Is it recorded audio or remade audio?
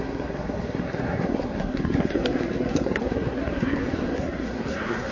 remade